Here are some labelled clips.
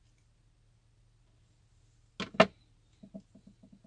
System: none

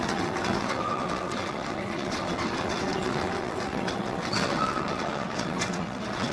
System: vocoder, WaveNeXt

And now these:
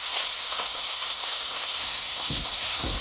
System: codec, SNAC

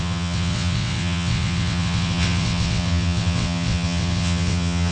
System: vocoder, WaveNeXt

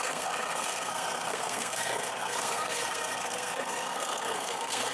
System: codec, SNAC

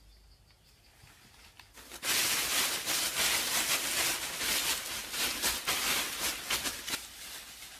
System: none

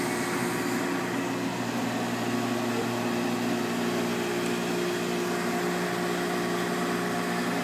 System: none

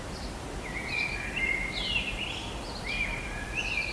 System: none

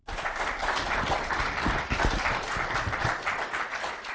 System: none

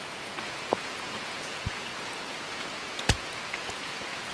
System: vocoder, Vocos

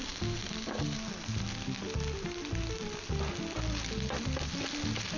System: none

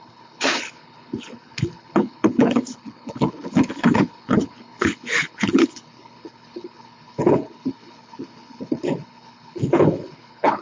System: codec, HILCodec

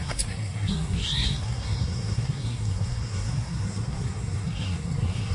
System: codec, SNAC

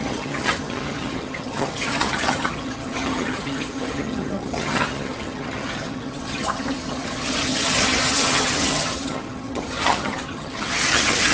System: vocoder, HiFi-GAN